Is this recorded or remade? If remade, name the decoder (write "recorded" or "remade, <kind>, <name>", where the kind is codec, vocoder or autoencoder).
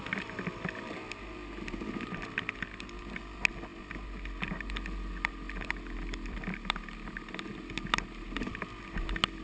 recorded